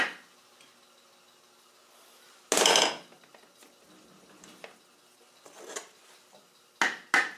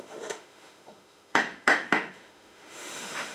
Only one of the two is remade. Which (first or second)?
second